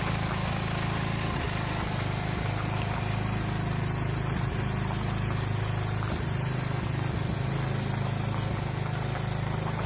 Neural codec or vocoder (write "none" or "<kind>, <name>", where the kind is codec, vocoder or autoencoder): none